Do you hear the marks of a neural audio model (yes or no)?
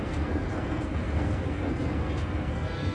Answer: yes